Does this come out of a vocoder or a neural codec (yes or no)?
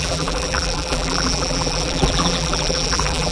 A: yes